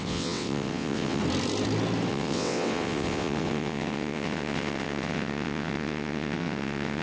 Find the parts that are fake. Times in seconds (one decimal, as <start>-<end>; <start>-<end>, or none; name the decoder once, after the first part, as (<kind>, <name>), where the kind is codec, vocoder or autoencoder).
0.0-1.2 (vocoder, WaveNeXt); 2.1-7.0